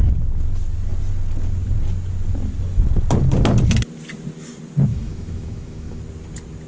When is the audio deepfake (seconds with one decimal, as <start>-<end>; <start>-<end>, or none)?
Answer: 4.9-6.0